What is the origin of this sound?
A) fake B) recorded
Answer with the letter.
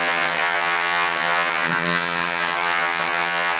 A